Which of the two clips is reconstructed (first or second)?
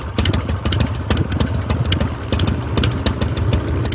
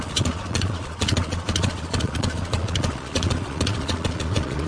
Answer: second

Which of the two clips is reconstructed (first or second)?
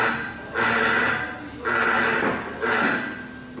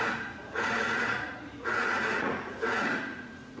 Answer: second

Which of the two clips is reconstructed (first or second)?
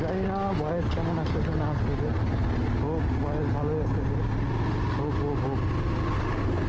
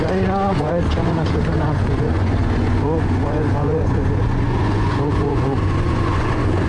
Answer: second